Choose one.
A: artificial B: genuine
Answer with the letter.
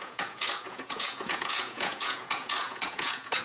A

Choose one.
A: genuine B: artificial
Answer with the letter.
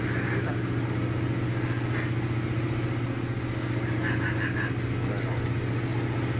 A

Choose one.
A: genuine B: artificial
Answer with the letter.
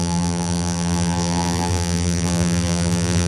B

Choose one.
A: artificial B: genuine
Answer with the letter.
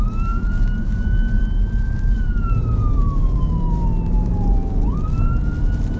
A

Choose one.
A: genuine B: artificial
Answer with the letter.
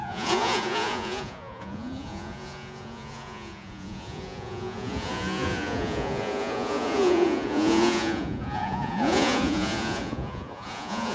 B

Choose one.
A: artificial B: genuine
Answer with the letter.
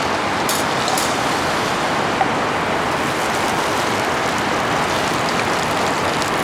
B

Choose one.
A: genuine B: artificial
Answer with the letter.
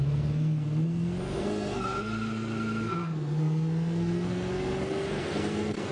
B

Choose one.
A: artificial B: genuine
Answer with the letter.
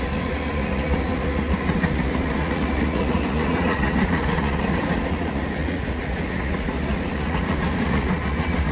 A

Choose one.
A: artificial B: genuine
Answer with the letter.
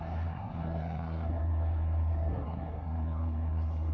A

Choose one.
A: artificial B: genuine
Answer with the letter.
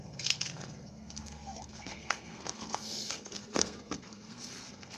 A